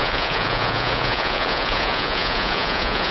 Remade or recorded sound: remade